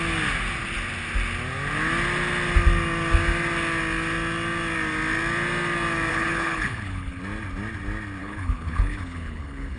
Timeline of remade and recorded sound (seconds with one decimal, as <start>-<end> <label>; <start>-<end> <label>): 0.0-6.1 recorded; 6.1-7.2 remade; 7.2-8.2 recorded; 8.2-9.8 remade